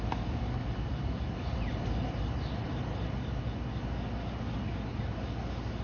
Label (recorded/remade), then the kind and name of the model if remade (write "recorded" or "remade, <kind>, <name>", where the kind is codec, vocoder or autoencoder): recorded